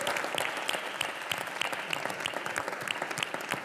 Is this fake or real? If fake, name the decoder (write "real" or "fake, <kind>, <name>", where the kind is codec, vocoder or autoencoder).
real